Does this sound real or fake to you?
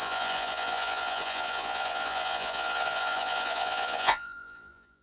fake